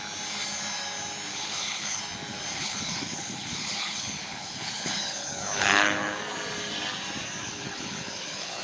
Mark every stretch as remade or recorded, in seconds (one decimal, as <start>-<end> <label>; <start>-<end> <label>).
0.0-1.3 recorded; 1.3-2.0 remade; 2.0-2.5 recorded; 2.5-6.2 remade; 6.2-7.4 recorded; 7.4-8.6 remade